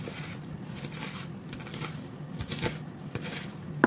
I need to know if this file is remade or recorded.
recorded